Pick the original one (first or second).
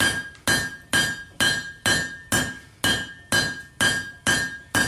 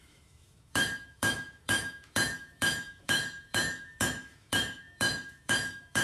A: first